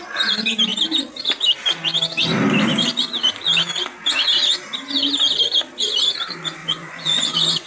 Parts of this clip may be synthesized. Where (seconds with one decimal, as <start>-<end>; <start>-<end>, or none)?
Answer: 6.6-7.7